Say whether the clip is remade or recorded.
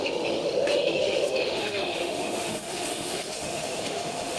remade